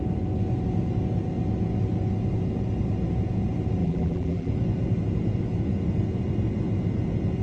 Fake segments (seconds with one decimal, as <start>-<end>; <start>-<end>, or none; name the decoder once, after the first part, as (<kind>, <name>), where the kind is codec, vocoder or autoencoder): 3.8-4.5 (vocoder, BigVGAN v2)